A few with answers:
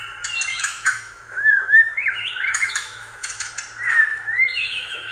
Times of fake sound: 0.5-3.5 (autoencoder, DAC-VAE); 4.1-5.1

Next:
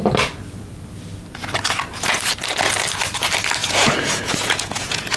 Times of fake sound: 3.6-5.2 (vocoder, Vocos)

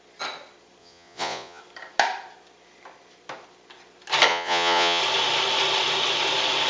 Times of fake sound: 0.8-1.6 (vocoder, Vocos); 4.3-5.0

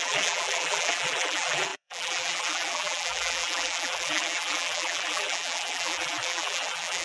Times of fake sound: 0.0-7.0 (vocoder, BigVGAN v2)

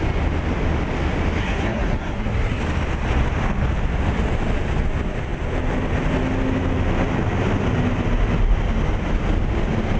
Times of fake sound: 1.4-2.6 (codec, SNAC)